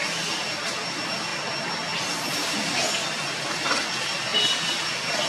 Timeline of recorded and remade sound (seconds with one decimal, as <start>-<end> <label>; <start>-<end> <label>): 0.0-5.3 recorded

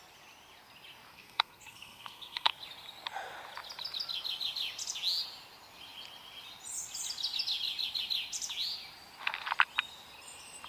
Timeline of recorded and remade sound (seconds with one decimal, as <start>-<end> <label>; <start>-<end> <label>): 0.0-1.1 recorded; 1.1-2.5 remade; 2.5-10.7 recorded

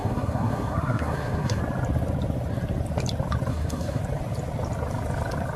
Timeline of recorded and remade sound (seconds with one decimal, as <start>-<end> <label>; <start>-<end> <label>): 0.0-1.6 remade; 1.6-3.5 recorded; 3.5-4.0 remade; 4.0-5.6 recorded

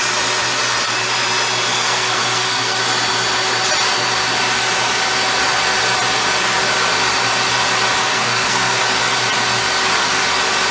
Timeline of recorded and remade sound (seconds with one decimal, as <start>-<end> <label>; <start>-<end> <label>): 0.0-1.7 recorded; 1.7-2.8 remade; 2.8-8.0 recorded; 8.0-8.8 remade; 8.8-10.7 recorded

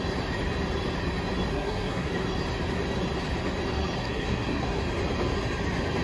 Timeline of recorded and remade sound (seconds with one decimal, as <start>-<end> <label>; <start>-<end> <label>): 0.0-1.5 recorded; 1.5-2.1 remade; 2.1-4.0 recorded; 4.0-4.8 remade; 4.8-6.0 recorded

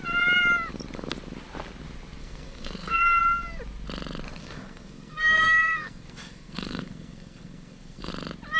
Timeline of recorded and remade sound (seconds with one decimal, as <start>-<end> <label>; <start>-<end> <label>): 0.0-2.2 recorded; 2.2-3.2 remade; 3.2-4.4 recorded; 4.4-8.1 remade; 8.1-8.6 recorded

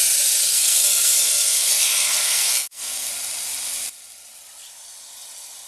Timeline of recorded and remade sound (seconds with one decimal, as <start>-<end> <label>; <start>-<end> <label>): 0.0-0.5 recorded; 0.5-3.1 remade; 3.1-5.7 recorded

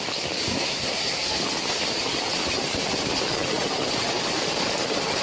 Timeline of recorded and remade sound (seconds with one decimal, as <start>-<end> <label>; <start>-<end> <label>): 0.0-0.5 recorded; 0.5-1.4 remade; 1.4-5.2 recorded